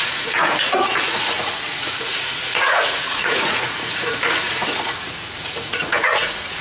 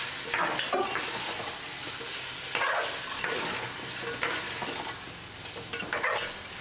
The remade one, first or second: first